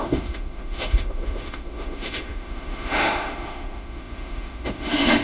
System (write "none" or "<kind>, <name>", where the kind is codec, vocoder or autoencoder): autoencoder, DAC-VAE